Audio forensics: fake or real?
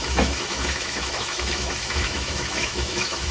fake